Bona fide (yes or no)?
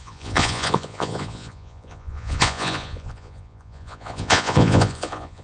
no